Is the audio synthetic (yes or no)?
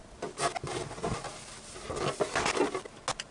no